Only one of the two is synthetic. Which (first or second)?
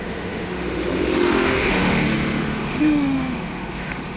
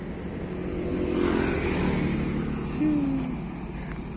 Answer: first